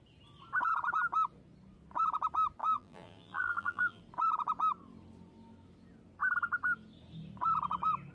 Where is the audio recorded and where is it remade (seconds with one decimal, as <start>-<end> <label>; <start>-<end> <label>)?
0.0-2.6 recorded; 2.6-4.0 remade; 4.0-8.1 recorded